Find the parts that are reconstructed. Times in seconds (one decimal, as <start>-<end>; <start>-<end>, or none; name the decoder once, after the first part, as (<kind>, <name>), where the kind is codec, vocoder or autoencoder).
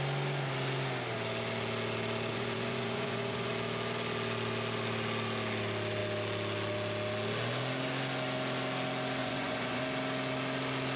2.3-3.5 (vocoder, Vocos); 9.2-9.8